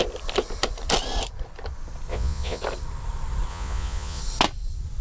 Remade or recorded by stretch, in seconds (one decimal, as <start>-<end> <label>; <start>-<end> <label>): 0.0-2.1 recorded; 2.1-2.6 remade; 2.6-3.5 recorded; 3.5-4.2 remade; 4.2-5.0 recorded